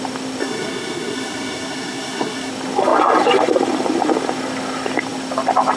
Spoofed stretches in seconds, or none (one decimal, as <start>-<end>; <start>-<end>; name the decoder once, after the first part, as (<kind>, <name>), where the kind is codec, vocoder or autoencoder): 0.4-2.5 (codec, SNAC)